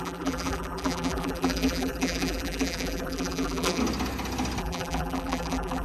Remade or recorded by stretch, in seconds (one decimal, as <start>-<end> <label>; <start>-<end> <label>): 0.0-3.8 remade; 3.8-4.6 recorded; 4.6-5.8 remade